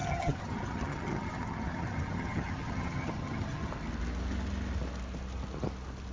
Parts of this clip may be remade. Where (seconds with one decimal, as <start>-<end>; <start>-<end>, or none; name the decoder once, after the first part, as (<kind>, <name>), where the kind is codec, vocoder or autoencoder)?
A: 0.0-3.7 (vocoder, HiFi-GAN)